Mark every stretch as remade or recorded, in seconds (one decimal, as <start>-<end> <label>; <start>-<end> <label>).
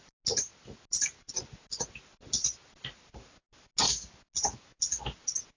0.0-5.6 recorded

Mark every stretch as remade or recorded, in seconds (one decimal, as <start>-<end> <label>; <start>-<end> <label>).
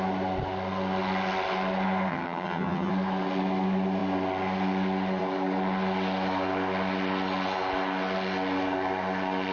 0.0-2.1 recorded; 2.1-2.9 remade; 2.9-9.5 recorded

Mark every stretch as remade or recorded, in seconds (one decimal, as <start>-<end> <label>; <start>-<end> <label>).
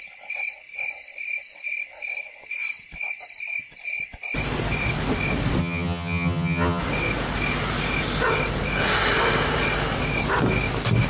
0.0-5.6 recorded; 5.6-6.8 remade; 6.8-11.1 recorded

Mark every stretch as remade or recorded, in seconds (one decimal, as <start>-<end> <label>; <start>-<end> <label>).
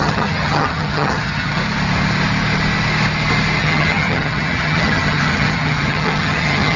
0.0-1.6 remade; 1.6-3.6 recorded; 3.6-6.8 remade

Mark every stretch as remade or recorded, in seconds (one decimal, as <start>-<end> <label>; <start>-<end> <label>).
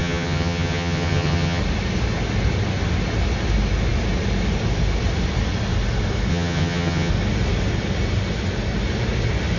0.0-1.6 remade; 1.6-6.3 recorded; 6.3-7.1 remade; 7.1-9.6 recorded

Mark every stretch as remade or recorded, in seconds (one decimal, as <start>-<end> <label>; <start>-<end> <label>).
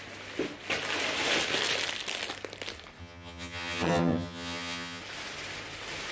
0.0-3.0 recorded; 3.0-5.0 remade; 5.0-6.1 recorded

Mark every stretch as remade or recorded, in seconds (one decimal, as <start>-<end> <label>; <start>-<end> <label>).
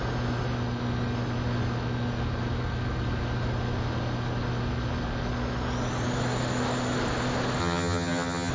0.0-7.6 recorded; 7.6-8.5 remade